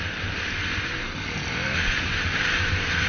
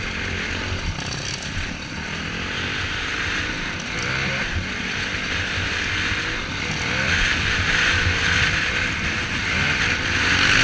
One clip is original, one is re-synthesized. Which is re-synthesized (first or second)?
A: first